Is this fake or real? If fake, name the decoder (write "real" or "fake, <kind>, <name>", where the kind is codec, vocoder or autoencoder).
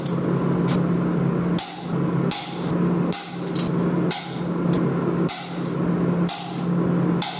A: real